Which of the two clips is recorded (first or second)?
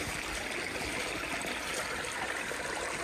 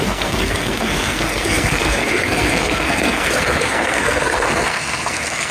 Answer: first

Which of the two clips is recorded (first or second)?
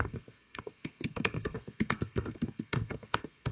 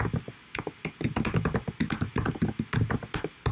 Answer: second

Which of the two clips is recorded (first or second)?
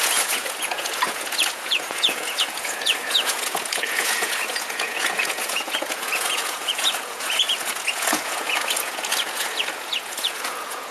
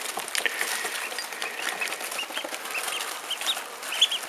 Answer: second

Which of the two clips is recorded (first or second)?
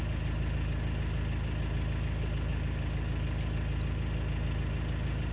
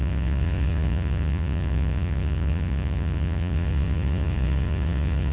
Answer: first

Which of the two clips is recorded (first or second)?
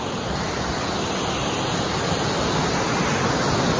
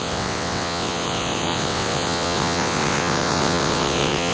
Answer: first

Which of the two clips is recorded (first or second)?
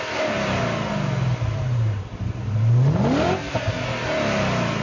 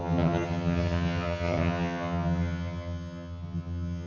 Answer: first